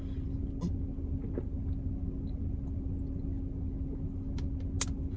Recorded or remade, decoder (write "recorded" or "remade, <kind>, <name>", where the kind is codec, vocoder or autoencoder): recorded